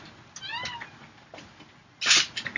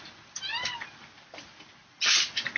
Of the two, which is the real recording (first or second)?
first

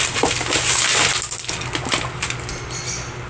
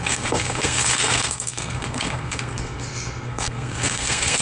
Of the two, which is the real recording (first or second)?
first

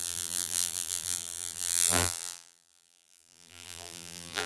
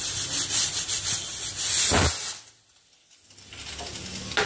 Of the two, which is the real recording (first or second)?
second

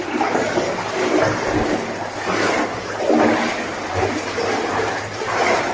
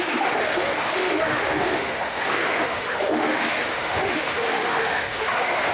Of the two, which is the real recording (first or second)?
first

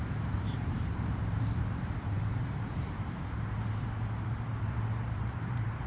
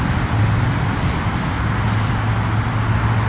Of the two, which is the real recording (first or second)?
second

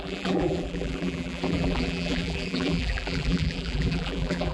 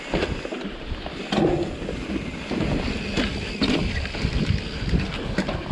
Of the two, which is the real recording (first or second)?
second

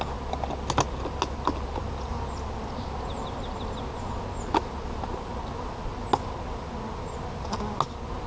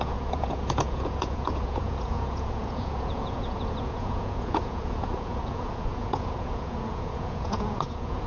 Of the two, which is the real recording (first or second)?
first